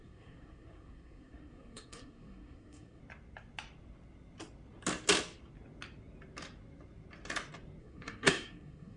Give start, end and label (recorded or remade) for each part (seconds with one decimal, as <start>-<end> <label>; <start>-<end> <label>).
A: 0.0-3.0 remade; 3.0-7.8 recorded; 7.8-9.0 remade